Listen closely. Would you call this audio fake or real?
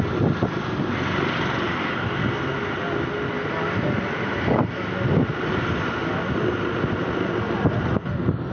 real